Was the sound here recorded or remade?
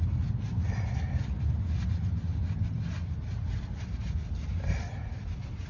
recorded